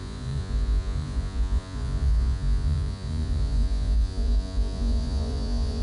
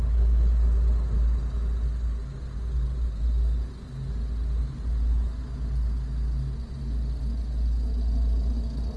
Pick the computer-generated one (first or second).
first